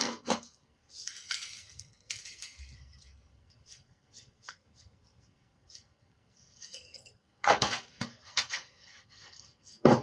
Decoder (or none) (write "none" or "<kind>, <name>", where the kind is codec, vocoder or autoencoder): codec, SNAC